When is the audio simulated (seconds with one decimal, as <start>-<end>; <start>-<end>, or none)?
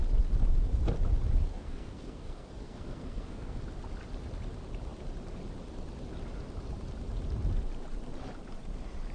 1.5-3.6